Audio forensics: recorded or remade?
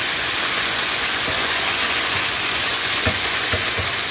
remade